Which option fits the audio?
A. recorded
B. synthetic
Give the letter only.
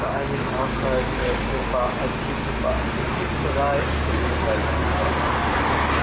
A